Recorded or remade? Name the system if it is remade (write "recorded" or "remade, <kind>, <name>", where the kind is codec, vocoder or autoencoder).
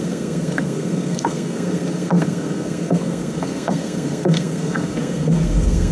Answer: remade, codec, SNAC